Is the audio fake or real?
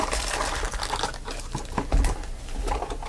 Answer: real